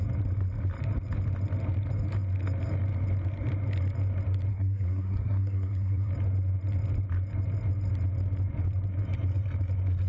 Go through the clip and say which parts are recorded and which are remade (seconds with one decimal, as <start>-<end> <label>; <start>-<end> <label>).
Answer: 0.0-4.5 recorded; 4.5-6.1 remade; 6.1-10.1 recorded